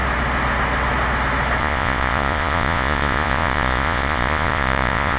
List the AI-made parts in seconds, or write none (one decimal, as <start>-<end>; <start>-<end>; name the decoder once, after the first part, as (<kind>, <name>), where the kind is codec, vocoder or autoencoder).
1.6-5.2 (vocoder, Vocos)